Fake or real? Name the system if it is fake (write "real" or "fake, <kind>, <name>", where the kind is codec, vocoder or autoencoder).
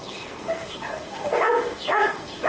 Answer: fake, codec, SNAC